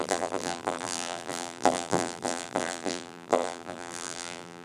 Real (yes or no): no